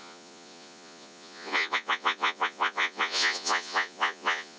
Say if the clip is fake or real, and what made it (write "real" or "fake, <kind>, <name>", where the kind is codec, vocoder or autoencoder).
fake, vocoder, Vocos